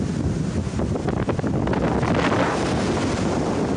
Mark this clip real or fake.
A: real